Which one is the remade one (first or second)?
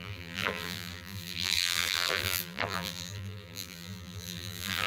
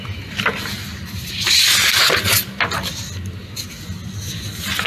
first